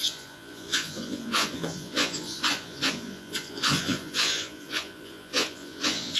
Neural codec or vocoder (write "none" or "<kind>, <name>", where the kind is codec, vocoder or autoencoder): vocoder, Vocos